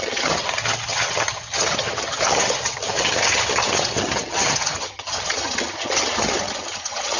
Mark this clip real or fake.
fake